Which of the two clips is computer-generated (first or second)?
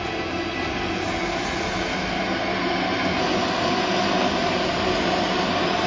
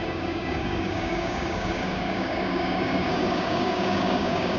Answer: second